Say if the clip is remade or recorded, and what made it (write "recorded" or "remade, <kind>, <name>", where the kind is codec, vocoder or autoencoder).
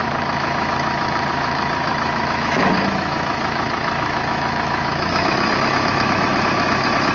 remade, autoencoder, DAC-VAE